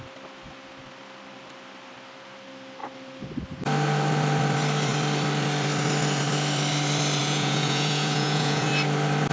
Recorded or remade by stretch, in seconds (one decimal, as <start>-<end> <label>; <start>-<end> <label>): 0.0-7.2 recorded; 7.2-8.7 remade; 8.7-9.3 recorded